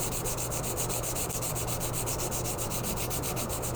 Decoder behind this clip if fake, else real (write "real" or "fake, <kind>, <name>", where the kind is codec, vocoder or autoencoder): fake, vocoder, BigVGAN v2